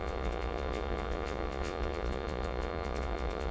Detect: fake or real fake